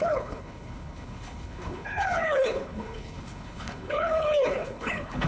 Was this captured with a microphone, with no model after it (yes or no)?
no